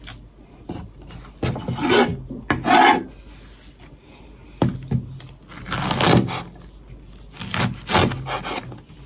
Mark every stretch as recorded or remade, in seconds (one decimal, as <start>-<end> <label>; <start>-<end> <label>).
0.0-9.1 recorded